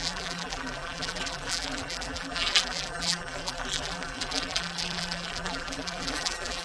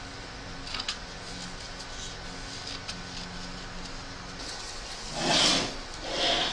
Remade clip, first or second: first